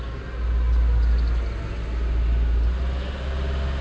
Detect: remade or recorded recorded